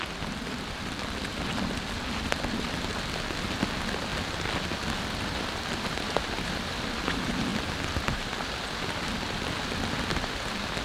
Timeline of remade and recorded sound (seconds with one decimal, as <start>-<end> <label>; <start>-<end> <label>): 0.0-10.8 recorded